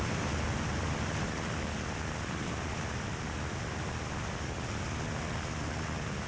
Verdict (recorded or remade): recorded